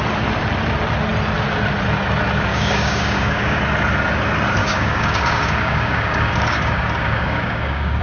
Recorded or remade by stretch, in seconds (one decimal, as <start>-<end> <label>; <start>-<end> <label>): 0.0-2.5 recorded; 2.5-3.6 remade; 3.6-4.6 recorded; 4.6-8.0 remade